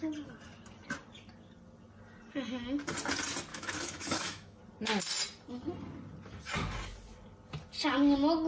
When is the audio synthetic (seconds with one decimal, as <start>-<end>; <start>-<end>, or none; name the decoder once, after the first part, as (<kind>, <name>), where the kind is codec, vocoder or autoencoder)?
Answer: 3.5-4.6 (autoencoder, DAC-VAE)